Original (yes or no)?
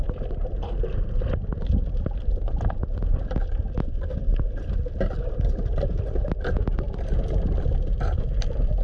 yes